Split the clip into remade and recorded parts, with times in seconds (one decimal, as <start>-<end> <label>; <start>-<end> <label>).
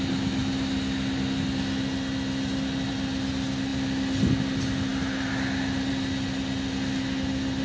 0.0-7.6 recorded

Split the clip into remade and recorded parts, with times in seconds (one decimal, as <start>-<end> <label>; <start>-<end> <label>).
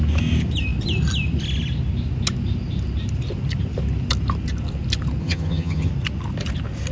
0.0-5.2 recorded; 5.2-5.9 remade; 5.9-6.9 recorded